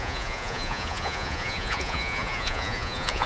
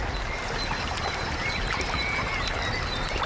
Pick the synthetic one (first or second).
first